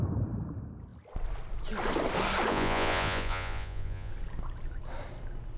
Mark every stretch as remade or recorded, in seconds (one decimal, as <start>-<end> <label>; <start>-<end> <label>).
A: 0.0-2.5 recorded; 2.5-4.1 remade; 4.1-5.6 recorded